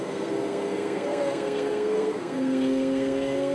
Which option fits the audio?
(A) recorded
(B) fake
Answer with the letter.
B